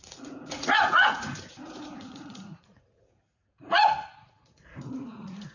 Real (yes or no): no